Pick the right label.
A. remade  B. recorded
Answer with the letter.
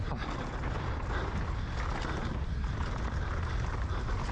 B